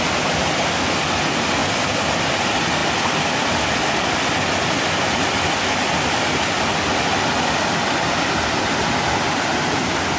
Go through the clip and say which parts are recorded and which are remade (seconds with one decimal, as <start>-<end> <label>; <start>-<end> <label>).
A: 0.0-10.2 recorded

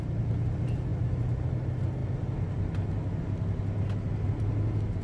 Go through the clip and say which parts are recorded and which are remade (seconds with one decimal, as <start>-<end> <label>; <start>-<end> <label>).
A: 0.0-5.0 recorded

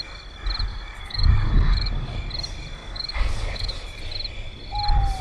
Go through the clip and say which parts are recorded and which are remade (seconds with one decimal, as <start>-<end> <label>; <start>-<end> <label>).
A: 0.0-0.7 recorded; 0.7-1.9 remade; 1.9-2.8 recorded; 2.8-4.0 remade; 4.0-5.2 recorded

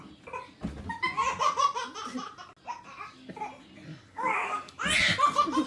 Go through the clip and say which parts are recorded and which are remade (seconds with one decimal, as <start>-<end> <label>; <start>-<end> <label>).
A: 0.0-3.9 recorded; 3.9-4.8 remade; 4.8-5.7 recorded